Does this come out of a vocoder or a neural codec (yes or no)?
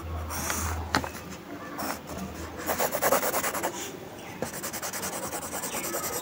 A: no